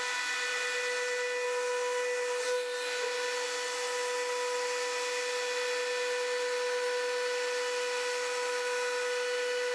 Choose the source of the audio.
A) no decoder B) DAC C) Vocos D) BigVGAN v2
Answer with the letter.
A